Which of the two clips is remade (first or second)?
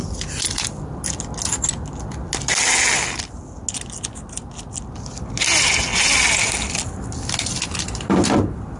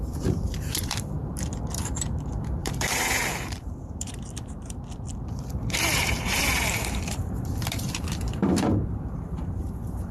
second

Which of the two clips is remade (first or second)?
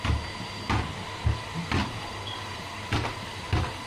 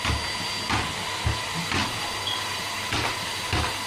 first